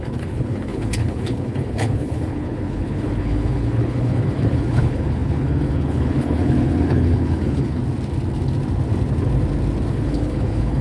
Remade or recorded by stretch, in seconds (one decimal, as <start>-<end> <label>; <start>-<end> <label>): 0.0-7.8 remade; 7.8-9.9 recorded; 9.9-10.8 remade